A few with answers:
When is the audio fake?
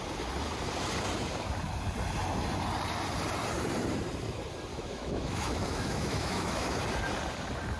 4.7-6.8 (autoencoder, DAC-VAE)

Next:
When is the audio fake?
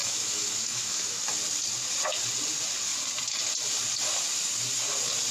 0.0-1.2 (autoencoder, DAC-VAE)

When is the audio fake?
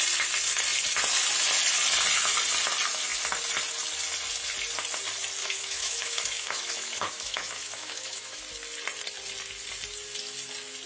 5.4-8.4 (autoencoder, DAC-VAE)